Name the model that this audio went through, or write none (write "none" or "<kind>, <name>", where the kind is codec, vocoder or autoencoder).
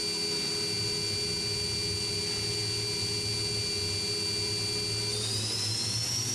none